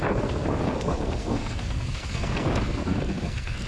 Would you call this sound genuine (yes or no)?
no